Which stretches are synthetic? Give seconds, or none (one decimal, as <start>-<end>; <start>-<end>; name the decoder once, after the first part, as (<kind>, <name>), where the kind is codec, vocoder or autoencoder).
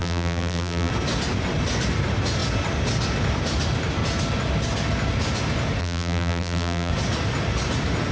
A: 0.0-0.9 (vocoder, BigVGAN v2); 5.8-6.9